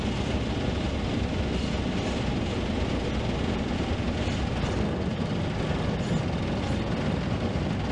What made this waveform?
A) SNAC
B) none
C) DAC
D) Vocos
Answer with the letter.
B